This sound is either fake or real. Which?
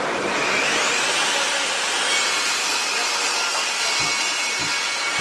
real